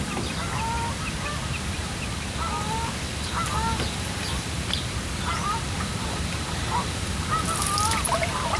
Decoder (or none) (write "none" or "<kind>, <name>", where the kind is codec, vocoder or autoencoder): vocoder, BigVGAN v2